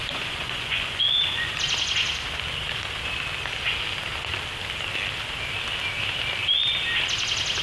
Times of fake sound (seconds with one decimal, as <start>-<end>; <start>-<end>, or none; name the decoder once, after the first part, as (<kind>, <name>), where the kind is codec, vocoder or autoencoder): 0.0-1.6 (vocoder, Vocos)